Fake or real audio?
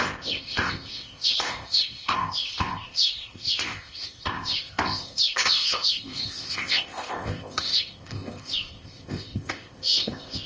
fake